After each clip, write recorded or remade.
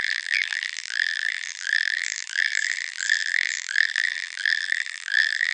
remade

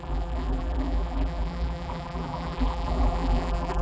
remade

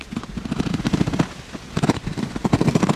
recorded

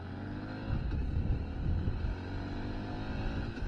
recorded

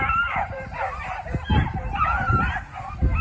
remade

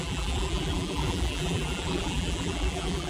remade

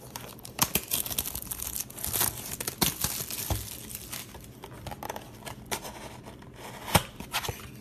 recorded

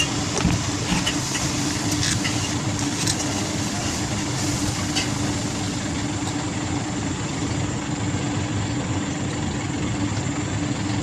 recorded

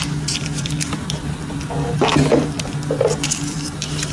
remade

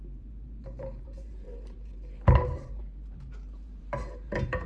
remade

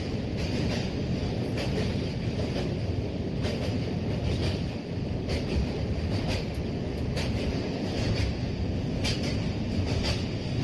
recorded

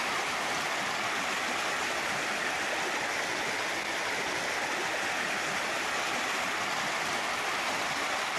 recorded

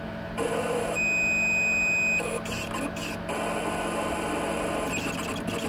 recorded